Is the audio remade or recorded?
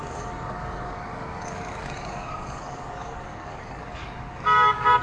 remade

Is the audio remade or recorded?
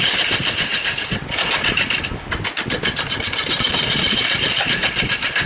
recorded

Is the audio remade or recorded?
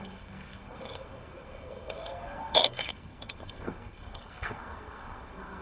remade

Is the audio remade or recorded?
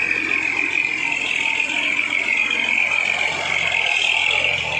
recorded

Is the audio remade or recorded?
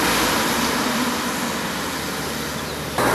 recorded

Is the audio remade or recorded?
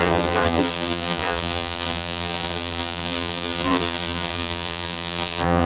remade